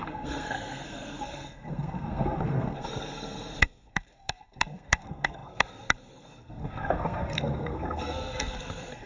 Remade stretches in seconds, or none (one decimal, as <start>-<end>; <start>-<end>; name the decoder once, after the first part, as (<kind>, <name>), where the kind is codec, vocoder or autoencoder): 0.0-9.1 (codec, SNAC)